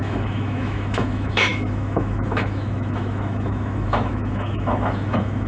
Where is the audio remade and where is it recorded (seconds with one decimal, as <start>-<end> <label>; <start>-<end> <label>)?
0.0-5.5 remade